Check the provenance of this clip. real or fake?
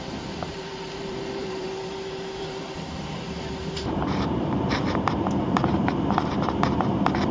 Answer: fake